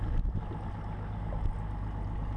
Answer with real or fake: real